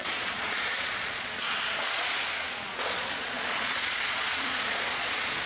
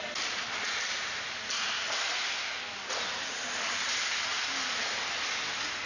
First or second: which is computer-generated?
first